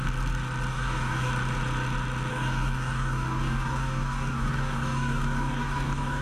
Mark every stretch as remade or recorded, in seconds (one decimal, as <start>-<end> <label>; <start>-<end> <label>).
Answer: 0.0-0.7 recorded; 0.7-1.3 remade; 1.3-2.3 recorded; 2.3-6.2 remade